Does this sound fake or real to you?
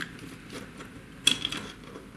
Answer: real